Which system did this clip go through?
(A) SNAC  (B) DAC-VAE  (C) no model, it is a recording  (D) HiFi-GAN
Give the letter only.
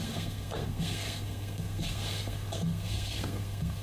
A